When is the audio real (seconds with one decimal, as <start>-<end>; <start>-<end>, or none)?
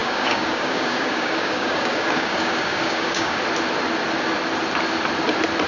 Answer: 3.4-5.7